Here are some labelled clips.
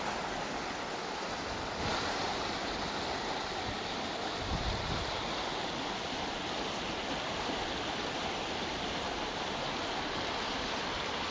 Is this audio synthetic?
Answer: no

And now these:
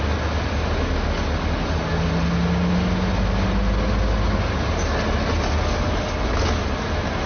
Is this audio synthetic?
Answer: no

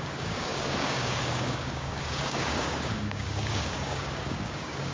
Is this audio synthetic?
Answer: yes